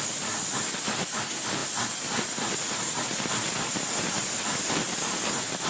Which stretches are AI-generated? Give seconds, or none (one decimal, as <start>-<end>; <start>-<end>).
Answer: none